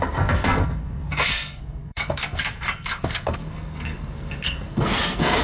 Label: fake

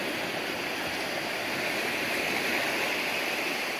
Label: real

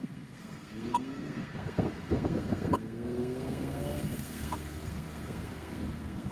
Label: fake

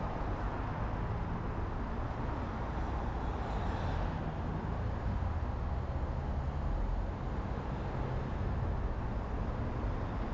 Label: real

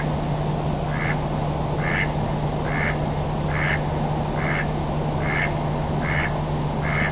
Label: real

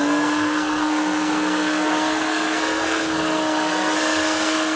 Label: fake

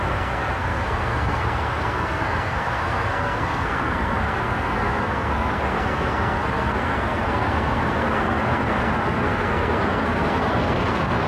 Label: fake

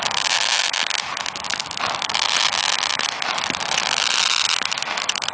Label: real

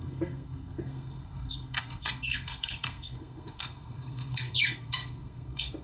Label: fake